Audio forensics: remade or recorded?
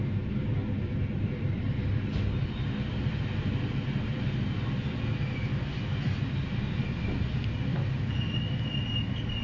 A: recorded